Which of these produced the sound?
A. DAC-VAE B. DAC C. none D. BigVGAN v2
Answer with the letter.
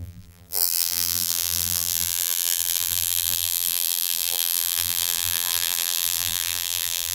D